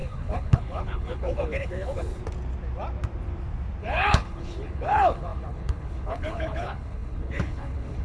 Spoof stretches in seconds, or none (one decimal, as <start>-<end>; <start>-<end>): 0.0-2.2; 3.8-8.0